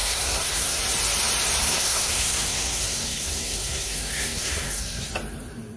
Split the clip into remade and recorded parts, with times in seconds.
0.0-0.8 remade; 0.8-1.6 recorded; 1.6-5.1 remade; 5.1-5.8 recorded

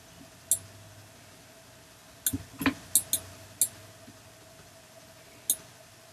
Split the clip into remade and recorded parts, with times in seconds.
0.0-6.1 recorded

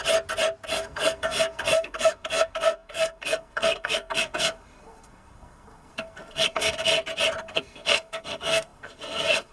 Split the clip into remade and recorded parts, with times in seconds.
0.0-0.7 recorded; 0.7-6.9 remade; 6.9-7.4 recorded; 7.4-9.5 remade

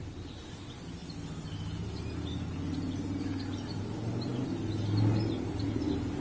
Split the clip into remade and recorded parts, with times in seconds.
0.0-6.2 recorded

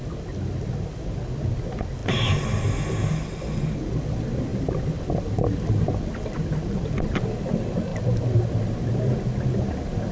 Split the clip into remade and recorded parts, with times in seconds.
0.0-10.1 recorded

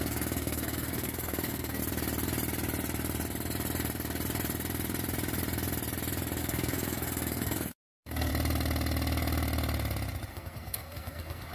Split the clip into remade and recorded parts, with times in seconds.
0.0-1.8 remade; 1.8-6.4 recorded; 6.4-8.3 remade; 8.3-10.3 recorded; 10.3-11.5 remade

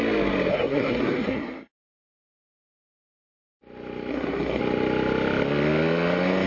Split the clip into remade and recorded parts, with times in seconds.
0.0-0.5 recorded; 0.5-1.7 remade; 1.7-4.1 recorded; 4.1-4.6 remade; 4.6-6.5 recorded